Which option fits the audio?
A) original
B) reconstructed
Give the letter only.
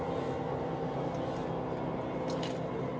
A